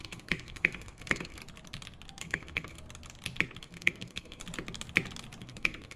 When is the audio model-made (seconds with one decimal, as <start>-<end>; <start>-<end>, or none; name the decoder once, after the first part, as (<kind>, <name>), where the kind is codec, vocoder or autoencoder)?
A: 0.0-1.4 (codec, SNAC); 2.2-2.8; 3.6-4.4; 5.4-6.0